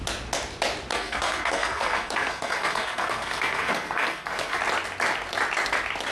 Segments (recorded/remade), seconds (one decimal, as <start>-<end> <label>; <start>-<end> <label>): 0.0-0.9 recorded; 0.9-4.6 remade; 4.6-6.1 recorded